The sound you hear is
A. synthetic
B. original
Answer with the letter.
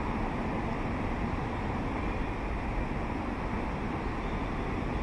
B